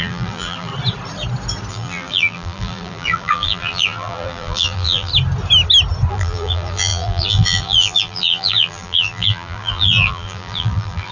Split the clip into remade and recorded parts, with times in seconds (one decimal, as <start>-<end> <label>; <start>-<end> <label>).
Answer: 0.0-0.7 remade; 0.7-1.7 recorded; 1.7-5.1 remade; 5.1-6.1 recorded; 6.1-11.1 remade